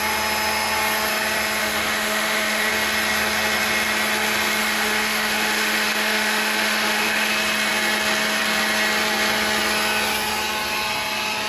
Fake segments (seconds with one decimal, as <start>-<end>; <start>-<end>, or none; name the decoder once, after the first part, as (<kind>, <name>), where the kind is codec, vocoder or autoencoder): 1.6-2.7 (autoencoder, DAC-VAE); 4.6-7.3